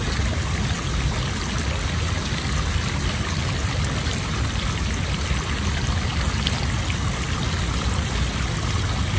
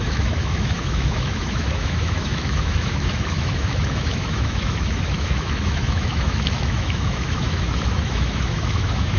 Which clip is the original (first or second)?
first